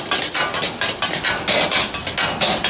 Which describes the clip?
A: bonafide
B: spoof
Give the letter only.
A